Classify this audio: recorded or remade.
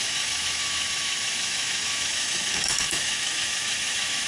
remade